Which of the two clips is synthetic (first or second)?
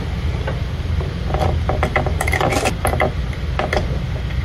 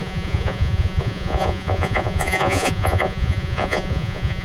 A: second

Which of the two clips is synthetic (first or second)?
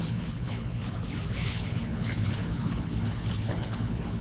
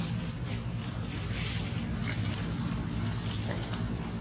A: first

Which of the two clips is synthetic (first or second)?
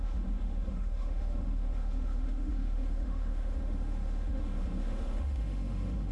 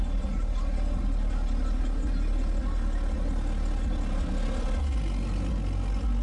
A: first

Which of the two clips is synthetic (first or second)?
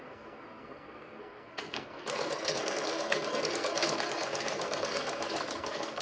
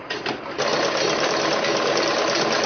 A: first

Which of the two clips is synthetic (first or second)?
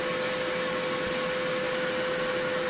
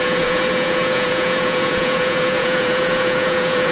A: second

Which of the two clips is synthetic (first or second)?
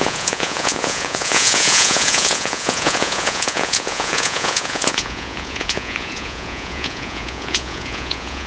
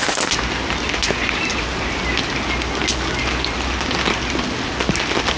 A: first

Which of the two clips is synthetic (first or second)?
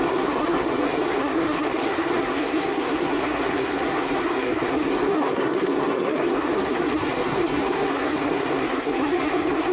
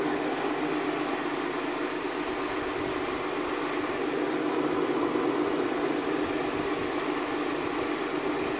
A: first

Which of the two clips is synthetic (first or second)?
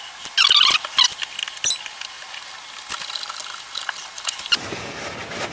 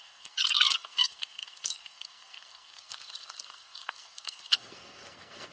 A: second